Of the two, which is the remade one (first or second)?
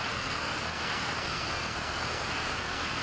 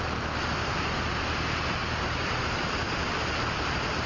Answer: first